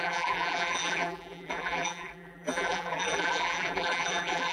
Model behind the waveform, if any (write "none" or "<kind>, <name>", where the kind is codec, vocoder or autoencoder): vocoder, BigVGAN v2